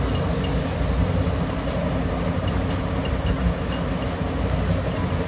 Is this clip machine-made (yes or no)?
no